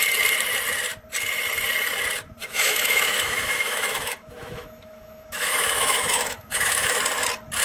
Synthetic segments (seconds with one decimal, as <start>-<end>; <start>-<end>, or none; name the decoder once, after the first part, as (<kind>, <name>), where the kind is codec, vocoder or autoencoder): 2.4-7.0 (autoencoder, DAC-VAE)